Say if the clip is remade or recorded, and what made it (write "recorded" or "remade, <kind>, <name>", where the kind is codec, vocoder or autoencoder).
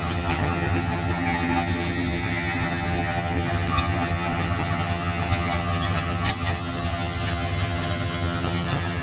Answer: remade, vocoder, HiFi-GAN